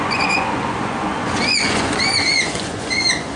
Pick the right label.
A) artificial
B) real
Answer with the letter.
A